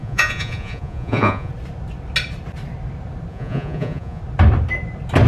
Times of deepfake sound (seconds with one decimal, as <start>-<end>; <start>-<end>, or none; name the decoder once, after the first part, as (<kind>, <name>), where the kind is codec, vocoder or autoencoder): 0.0-1.5 (vocoder, Vocos); 3.3-4.2